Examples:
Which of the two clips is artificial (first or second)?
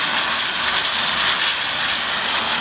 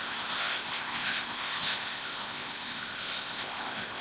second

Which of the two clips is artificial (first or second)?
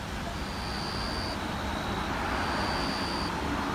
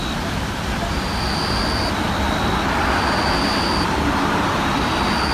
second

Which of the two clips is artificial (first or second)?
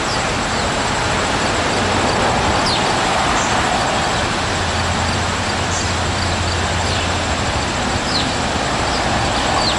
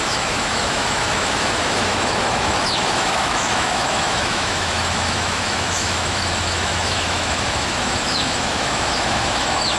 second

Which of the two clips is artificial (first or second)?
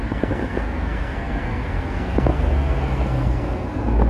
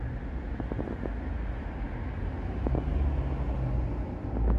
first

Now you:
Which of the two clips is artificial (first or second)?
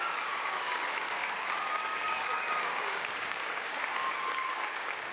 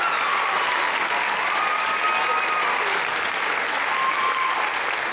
first